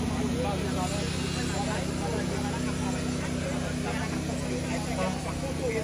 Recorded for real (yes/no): yes